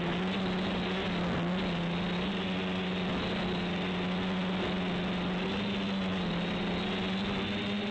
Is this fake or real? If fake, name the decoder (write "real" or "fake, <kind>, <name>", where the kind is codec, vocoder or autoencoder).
real